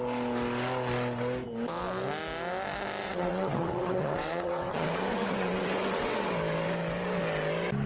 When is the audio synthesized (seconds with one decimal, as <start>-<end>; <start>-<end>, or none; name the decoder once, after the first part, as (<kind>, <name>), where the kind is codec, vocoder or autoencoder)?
3.0-6.3 (vocoder, WaveNeXt)